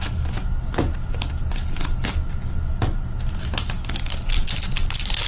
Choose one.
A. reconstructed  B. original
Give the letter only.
B